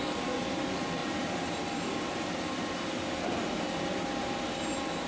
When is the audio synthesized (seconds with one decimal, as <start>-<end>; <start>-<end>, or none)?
1.0-3.1; 4.2-5.1